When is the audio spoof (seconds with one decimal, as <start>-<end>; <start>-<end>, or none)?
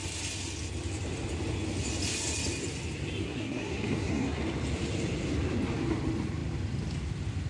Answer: 3.2-4.4